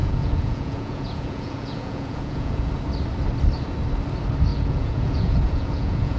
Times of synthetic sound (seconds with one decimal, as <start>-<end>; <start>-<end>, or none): 0.0-2.7; 4.5-6.2

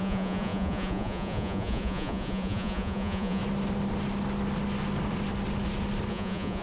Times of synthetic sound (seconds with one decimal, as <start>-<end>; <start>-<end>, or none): 0.0-3.4; 6.1-6.6

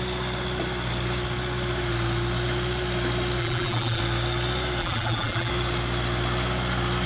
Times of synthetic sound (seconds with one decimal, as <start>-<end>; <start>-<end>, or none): 3.4-4.0; 4.8-5.5

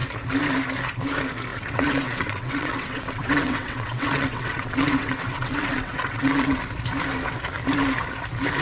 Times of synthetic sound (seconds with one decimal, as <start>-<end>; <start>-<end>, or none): 1.5-6.6

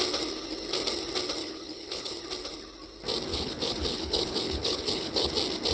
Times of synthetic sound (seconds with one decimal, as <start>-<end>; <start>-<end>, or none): 1.4-2.2; 3.3-5.3

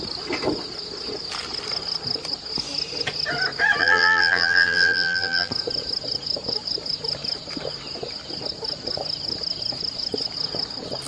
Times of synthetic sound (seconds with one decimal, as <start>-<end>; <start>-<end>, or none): 3.8-5.5